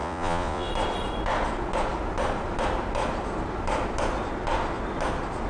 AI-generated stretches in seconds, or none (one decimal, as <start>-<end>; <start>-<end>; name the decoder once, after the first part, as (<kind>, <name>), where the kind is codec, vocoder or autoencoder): 0.0-0.7 (vocoder, Vocos)